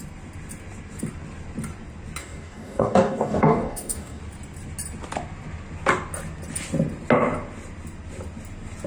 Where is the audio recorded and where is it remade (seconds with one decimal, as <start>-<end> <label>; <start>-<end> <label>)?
0.0-2.2 recorded; 2.2-4.2 remade; 4.2-8.9 recorded

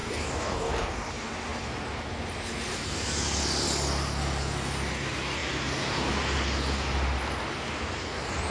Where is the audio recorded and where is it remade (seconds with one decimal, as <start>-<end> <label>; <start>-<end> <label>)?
0.0-1.1 remade; 1.1-8.5 recorded

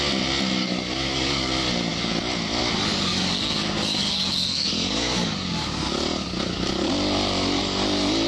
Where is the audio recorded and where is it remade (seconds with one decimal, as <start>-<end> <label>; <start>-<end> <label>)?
0.0-0.6 recorded; 0.6-1.5 remade; 1.5-3.1 recorded; 3.1-6.9 remade; 6.9-8.3 recorded

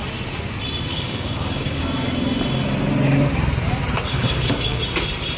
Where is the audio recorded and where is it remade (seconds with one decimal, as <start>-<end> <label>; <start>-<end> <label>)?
0.0-0.9 recorded; 0.9-1.8 remade; 1.8-4.1 recorded; 4.1-4.8 remade; 4.8-5.4 recorded

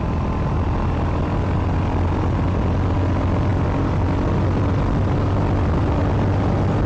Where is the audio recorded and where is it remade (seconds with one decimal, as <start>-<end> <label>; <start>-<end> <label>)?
0.0-6.9 recorded